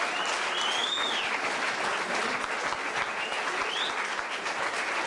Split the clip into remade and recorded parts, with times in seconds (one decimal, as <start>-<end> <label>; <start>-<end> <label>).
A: 0.0-5.1 recorded